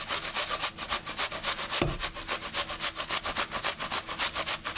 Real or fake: real